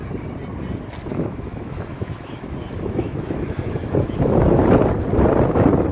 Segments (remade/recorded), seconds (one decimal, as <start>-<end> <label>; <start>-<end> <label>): 0.0-1.1 recorded; 1.1-4.6 remade; 4.6-5.9 recorded